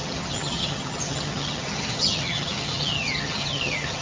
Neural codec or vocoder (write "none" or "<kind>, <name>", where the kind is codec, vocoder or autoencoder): vocoder, HiFi-GAN